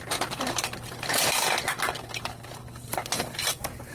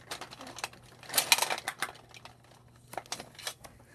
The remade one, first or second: first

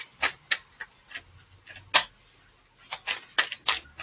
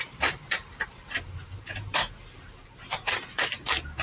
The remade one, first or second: second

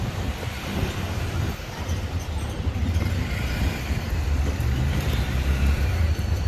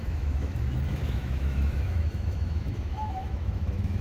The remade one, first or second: second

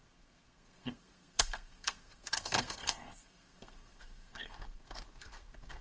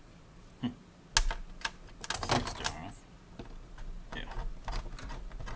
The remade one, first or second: first